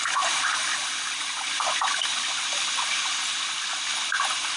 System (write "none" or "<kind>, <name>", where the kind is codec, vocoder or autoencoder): none